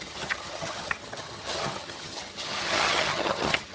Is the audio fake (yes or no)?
yes